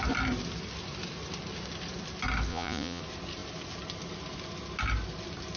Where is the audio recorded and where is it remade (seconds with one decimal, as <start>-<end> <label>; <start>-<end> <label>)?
0.0-2.5 recorded; 2.5-3.0 remade; 3.0-5.6 recorded